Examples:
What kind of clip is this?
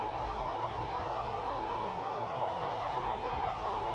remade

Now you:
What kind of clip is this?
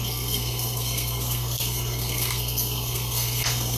remade